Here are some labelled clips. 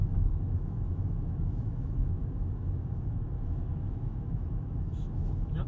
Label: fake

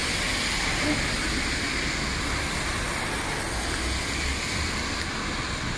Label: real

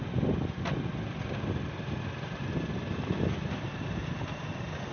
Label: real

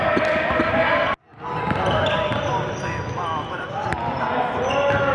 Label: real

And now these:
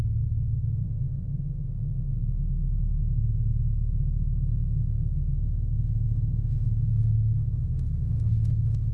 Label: fake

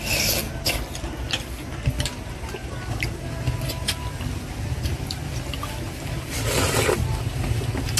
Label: real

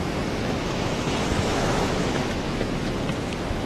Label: fake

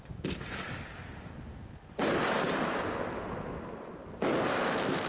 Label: real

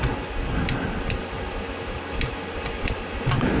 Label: real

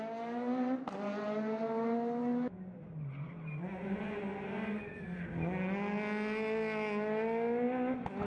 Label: real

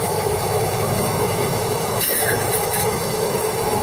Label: fake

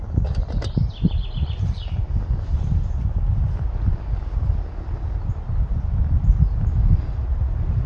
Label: real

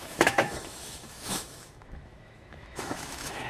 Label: fake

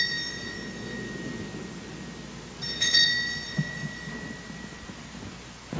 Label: real